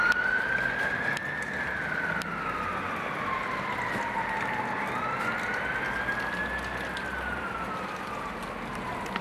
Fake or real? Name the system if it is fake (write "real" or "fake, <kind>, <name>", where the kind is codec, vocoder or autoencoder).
real